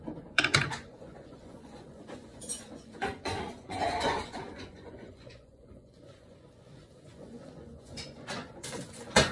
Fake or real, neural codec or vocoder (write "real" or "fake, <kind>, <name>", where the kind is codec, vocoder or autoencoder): fake, vocoder, Vocos